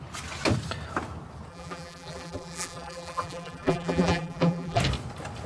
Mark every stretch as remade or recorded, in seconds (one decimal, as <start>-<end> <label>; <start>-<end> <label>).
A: 0.0-1.5 recorded; 1.5-4.8 remade; 4.8-5.5 recorded